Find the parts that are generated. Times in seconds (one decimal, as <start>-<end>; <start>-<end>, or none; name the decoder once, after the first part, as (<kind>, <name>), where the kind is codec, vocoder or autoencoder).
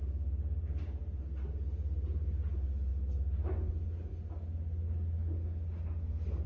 none